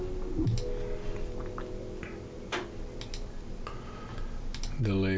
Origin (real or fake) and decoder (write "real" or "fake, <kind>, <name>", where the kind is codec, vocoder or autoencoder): real